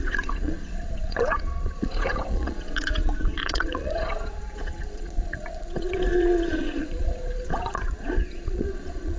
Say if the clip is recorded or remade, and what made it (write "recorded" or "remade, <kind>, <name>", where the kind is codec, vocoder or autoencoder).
remade, vocoder, Vocos